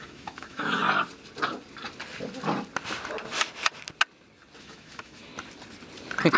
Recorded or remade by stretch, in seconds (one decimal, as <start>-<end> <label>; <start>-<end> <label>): 0.0-0.8 remade; 0.8-4.6 recorded; 4.6-5.3 remade; 5.3-6.4 recorded